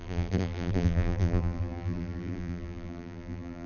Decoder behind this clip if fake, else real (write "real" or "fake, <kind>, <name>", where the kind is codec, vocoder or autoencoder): fake, vocoder, BigVGAN v2